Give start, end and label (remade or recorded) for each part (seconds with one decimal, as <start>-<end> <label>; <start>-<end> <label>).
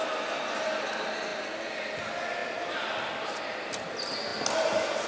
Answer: 0.0-1.3 recorded; 1.3-2.0 remade; 2.0-5.1 recorded